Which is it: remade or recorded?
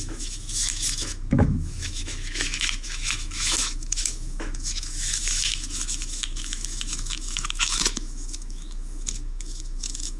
remade